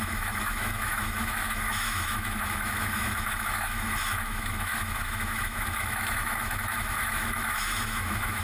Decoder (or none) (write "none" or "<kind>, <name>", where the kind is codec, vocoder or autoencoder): autoencoder, DAC-VAE